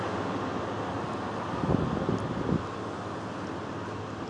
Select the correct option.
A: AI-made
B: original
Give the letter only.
B